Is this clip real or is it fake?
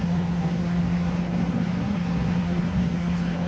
fake